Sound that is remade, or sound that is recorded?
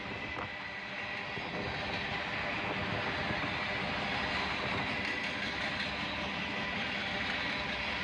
recorded